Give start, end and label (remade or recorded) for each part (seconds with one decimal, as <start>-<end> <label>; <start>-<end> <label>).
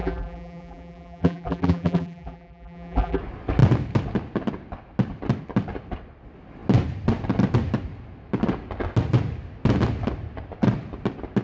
0.0-3.2 remade; 3.2-11.4 recorded